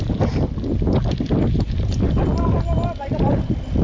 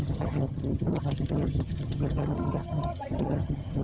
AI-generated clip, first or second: second